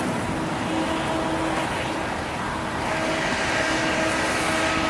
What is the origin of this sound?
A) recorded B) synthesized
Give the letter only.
A